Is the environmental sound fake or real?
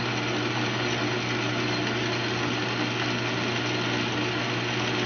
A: real